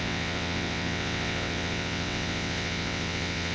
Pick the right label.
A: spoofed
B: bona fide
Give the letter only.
A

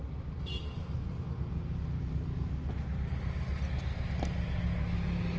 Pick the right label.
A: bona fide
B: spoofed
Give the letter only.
A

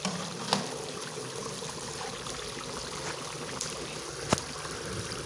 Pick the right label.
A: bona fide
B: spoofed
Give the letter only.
A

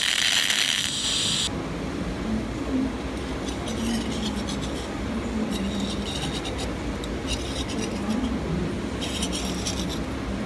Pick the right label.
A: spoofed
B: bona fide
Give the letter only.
B